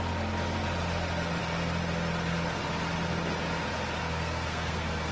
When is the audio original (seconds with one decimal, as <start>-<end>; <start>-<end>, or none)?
0.0-4.0